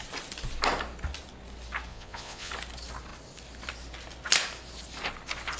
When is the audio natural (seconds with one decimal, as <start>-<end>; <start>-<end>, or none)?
0.0-1.9; 2.5-5.6